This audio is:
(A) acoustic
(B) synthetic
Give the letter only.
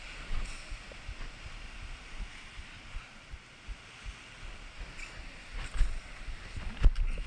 A